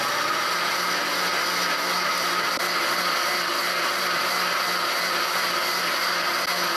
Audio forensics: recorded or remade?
recorded